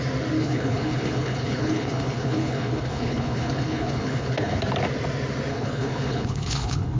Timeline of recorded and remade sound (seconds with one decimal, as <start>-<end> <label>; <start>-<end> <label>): 0.0-0.4 recorded; 0.4-4.6 remade; 4.6-5.5 recorded; 5.5-7.0 remade